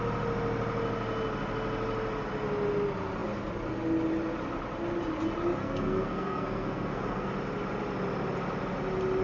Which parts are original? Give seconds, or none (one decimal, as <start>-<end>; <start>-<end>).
0.0-5.6; 7.3-9.2